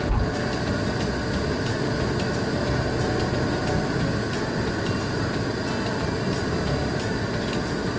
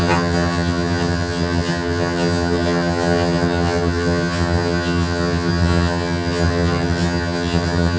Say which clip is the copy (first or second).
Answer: second